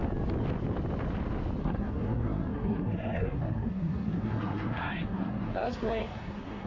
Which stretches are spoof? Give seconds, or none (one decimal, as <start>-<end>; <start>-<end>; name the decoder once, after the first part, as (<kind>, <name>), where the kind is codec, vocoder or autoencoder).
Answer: 1.6-6.7 (codec, SNAC)